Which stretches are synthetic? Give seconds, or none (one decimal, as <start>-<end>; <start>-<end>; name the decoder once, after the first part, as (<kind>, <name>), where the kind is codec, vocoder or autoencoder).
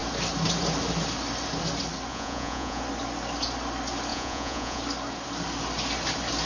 2.1-2.8 (vocoder, Vocos); 4.1-4.8